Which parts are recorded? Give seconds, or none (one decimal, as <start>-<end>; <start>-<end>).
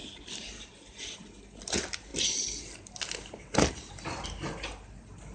0.0-5.3